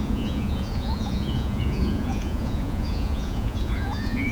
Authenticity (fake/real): fake